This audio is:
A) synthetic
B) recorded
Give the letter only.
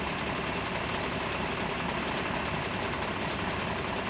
B